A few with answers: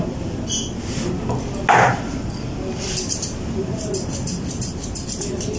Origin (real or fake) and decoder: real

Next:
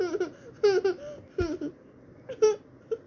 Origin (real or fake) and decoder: real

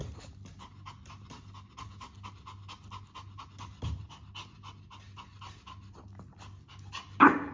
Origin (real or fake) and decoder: real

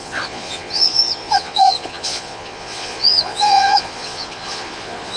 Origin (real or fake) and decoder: fake, vocoder, Vocos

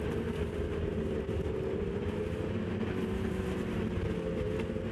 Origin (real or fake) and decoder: real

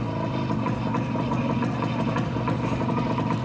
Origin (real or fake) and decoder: real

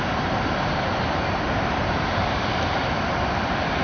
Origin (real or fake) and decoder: fake, vocoder, BigVGAN v2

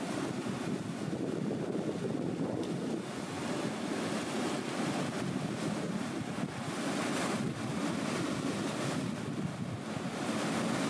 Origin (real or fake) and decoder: real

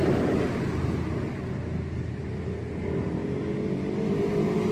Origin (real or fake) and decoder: real